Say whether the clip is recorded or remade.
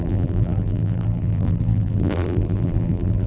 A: remade